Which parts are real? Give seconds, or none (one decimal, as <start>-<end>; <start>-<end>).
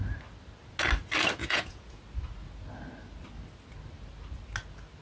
0.0-1.4; 2.0-5.0